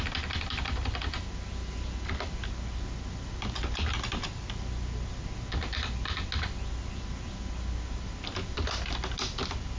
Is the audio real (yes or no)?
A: yes